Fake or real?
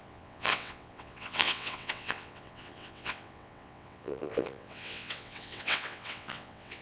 fake